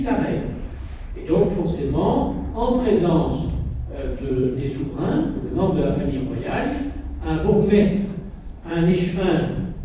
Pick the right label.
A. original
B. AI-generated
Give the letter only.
B